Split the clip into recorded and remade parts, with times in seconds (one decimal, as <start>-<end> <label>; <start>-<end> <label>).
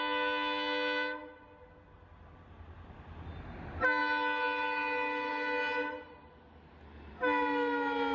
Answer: 0.0-8.1 recorded